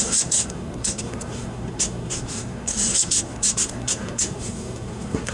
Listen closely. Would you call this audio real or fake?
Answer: fake